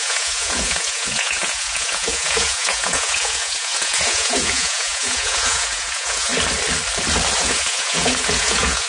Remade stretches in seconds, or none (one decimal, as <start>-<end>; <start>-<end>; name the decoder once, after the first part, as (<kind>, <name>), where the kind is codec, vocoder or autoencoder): 0.0-6.3 (vocoder, Vocos); 7.4-8.9